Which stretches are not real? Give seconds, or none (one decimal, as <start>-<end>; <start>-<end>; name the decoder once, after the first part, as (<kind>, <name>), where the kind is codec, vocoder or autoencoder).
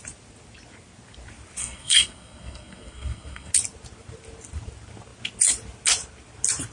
1.6-3.5 (codec, SNAC)